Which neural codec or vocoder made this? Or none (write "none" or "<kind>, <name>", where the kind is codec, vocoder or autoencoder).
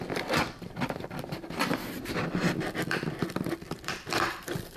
vocoder, BigVGAN v2